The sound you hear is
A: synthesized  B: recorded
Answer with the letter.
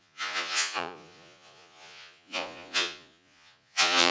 A